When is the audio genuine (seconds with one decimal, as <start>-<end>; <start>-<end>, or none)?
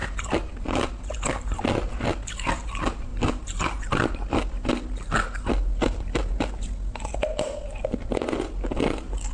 0.0-9.3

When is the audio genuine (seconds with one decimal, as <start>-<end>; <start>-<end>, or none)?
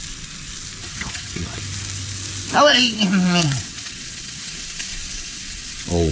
0.0-0.8; 1.6-2.7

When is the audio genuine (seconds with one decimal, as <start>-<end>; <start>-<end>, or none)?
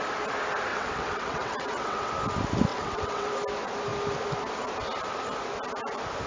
0.0-0.7; 2.1-2.7; 3.3-6.3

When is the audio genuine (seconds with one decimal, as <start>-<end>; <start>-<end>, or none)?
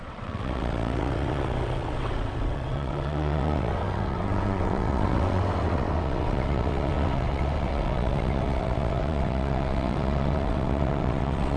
none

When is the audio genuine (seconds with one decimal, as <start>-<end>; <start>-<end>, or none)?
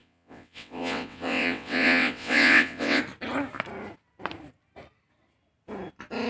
3.0-6.3